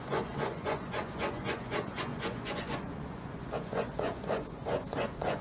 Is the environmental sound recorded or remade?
remade